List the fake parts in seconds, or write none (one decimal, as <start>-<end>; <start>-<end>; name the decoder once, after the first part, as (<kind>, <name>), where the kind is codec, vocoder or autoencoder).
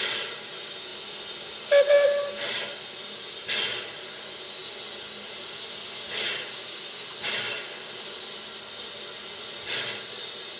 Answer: none